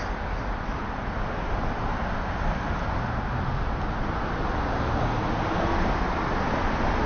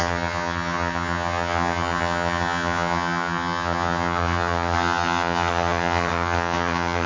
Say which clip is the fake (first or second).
second